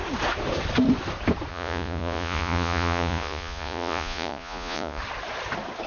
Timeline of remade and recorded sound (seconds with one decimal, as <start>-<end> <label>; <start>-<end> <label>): 0.0-1.5 recorded; 1.5-5.0 remade; 5.0-5.9 recorded